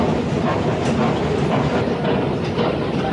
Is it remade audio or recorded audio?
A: recorded